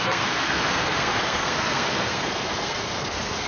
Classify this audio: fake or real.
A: fake